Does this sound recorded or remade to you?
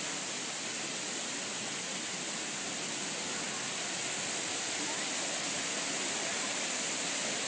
remade